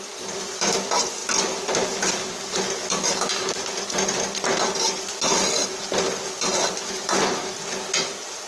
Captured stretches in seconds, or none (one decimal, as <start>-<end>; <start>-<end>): 0.0-6.5; 7.2-8.5